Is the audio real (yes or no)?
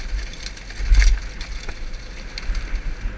yes